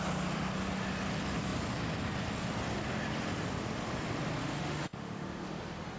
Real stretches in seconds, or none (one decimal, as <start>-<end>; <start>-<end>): 0.0-4.4; 5.6-6.0